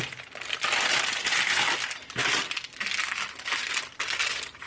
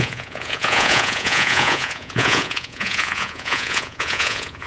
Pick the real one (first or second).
first